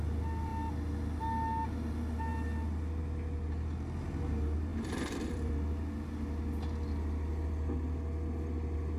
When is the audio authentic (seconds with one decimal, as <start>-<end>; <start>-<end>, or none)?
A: 0.0-4.7; 5.5-9.0